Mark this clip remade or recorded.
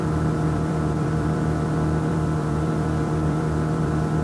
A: remade